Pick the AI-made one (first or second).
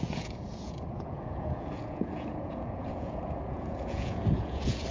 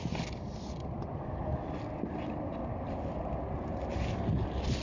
first